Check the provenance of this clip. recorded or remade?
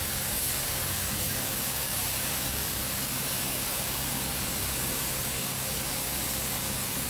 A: remade